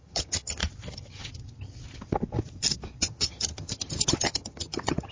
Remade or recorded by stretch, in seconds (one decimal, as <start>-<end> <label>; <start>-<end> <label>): 0.0-0.6 remade; 0.6-3.0 recorded; 3.0-5.1 remade